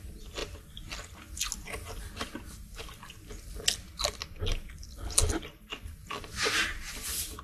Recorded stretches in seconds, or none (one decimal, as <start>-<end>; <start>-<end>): 0.0-7.4